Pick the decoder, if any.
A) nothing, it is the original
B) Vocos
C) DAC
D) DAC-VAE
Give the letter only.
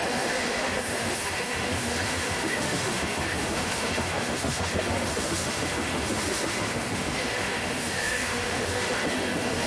D